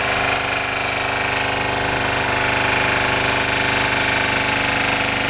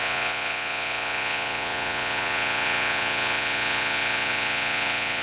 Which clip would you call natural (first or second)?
first